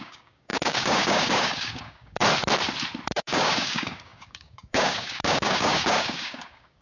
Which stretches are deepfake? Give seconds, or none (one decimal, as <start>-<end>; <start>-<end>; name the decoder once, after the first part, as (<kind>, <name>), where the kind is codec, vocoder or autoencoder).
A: 0.0-2.2 (codec, DAC); 3.1-6.8